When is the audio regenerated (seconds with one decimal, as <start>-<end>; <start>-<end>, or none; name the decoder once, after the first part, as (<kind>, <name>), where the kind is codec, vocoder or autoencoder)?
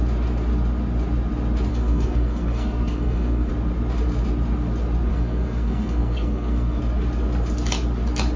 1.7-3.5 (codec, SNAC); 5.1-6.8